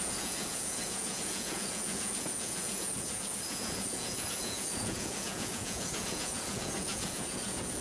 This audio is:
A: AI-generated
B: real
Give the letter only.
A